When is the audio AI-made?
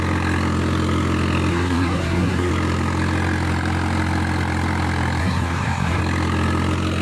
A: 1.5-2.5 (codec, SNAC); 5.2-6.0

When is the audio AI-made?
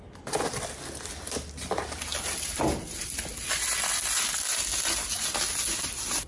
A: none